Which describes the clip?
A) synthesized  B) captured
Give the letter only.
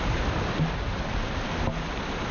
B